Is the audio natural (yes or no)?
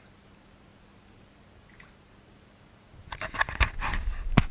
yes